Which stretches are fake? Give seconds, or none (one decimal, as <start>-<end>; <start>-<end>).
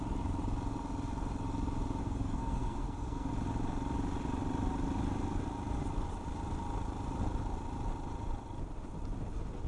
2.0-3.3